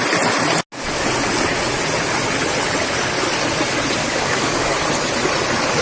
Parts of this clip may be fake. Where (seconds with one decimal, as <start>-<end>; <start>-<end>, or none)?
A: 4.0-4.7